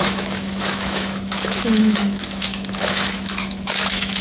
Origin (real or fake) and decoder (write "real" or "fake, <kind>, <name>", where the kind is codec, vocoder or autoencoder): fake, autoencoder, DAC-VAE